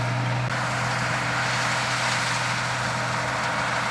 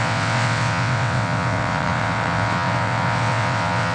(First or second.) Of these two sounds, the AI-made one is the second